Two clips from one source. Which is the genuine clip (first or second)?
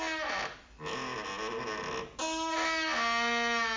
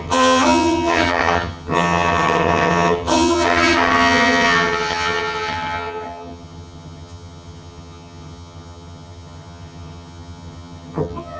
first